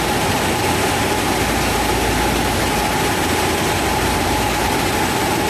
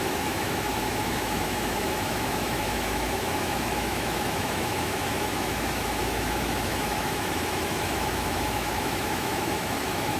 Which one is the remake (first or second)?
second